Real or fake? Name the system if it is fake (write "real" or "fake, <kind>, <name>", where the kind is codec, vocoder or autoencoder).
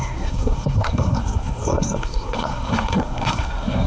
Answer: fake, codec, SNAC